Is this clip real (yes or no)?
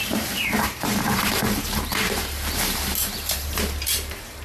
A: no